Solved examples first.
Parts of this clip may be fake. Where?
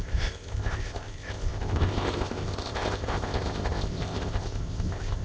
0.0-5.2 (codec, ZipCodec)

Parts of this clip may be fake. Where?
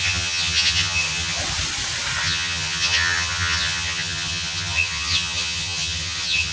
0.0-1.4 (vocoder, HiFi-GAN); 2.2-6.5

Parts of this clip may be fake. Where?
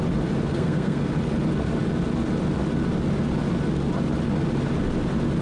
0.5-1.1 (codec, SNAC)